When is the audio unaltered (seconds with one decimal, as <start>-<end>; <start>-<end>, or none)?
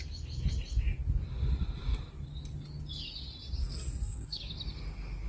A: 0.0-3.6; 4.4-5.3